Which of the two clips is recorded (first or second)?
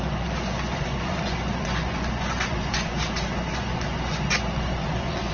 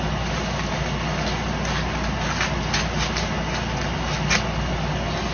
second